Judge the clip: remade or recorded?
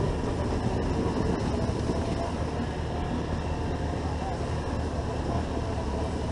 recorded